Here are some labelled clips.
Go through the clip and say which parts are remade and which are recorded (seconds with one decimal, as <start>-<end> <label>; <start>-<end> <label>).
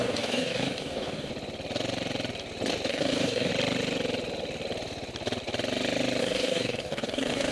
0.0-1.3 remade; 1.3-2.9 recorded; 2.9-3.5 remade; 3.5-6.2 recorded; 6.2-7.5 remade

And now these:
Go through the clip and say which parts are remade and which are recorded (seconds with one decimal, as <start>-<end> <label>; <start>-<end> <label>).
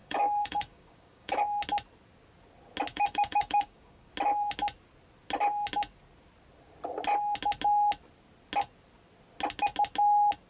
0.0-1.4 remade; 1.4-2.9 recorded; 2.9-4.1 remade; 4.1-10.5 recorded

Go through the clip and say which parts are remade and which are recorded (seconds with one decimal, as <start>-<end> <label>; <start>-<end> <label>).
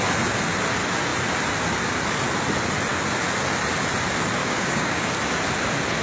0.0-4.4 recorded; 4.4-5.1 remade; 5.1-6.0 recorded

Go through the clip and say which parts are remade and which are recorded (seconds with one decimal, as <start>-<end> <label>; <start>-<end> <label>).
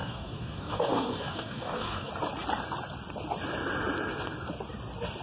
0.0-2.1 remade; 2.1-5.2 recorded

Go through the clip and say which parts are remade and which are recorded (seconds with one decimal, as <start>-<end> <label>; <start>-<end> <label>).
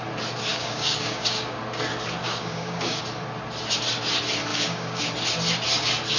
0.0-0.5 recorded; 0.5-1.6 remade; 1.6-2.2 recorded; 2.2-3.0 remade; 3.0-4.5 recorded; 4.5-5.0 remade; 5.0-6.2 recorded